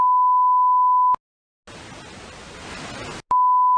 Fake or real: real